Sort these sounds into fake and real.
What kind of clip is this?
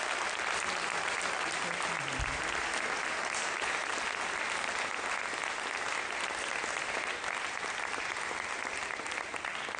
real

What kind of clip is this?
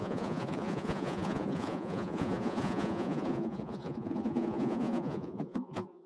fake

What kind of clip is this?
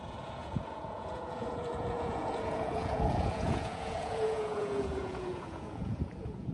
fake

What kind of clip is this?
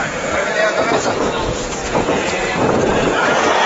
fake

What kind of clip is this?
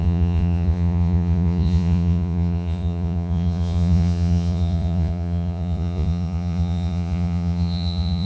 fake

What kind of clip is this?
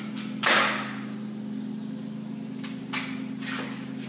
real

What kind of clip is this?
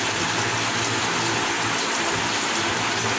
real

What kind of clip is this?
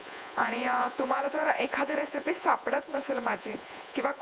fake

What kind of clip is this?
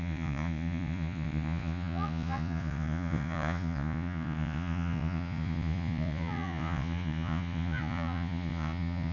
fake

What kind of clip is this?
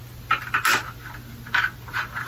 real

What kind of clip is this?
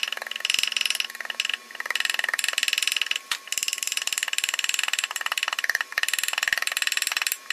real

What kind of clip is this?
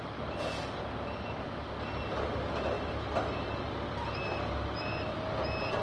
real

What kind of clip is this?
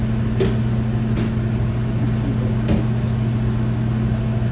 real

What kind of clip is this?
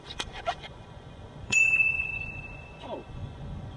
fake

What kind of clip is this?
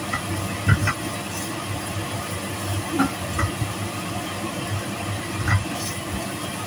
real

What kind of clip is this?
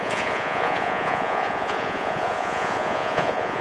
fake